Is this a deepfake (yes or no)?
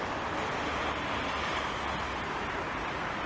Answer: no